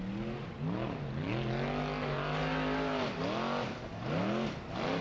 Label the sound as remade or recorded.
recorded